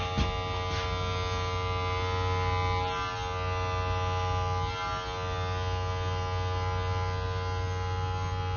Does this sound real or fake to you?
real